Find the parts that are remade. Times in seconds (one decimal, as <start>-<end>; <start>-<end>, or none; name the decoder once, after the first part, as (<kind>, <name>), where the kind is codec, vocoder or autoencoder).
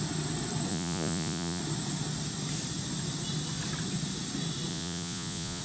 0.7-1.6 (vocoder, Vocos); 4.7-5.6